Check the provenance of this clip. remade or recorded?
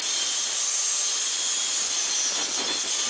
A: recorded